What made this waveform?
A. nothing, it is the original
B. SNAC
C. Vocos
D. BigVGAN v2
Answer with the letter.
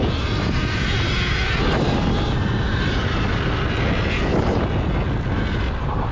A